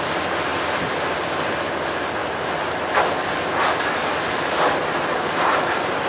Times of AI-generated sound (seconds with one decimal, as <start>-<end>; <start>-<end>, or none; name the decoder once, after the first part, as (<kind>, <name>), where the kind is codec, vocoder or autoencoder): none